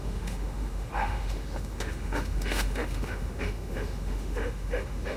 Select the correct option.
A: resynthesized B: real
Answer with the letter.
A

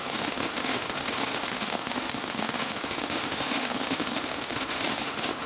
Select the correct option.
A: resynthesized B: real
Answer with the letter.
A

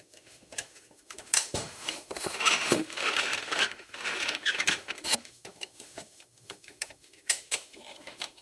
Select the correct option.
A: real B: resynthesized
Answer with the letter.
B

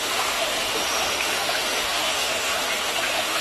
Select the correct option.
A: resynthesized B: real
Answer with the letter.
A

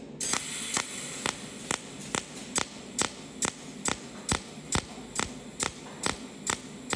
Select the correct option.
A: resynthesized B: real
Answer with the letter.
B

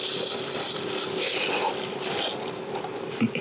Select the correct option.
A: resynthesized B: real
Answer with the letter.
B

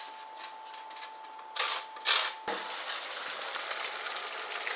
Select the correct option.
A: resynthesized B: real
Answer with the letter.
B